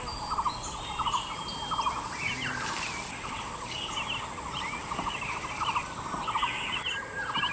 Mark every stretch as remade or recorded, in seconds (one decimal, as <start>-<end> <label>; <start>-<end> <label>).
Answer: 0.0-7.5 recorded